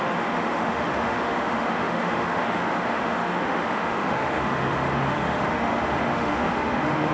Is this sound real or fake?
fake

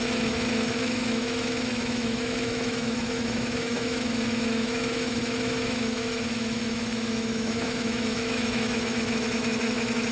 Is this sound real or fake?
fake